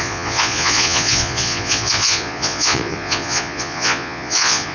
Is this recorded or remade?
remade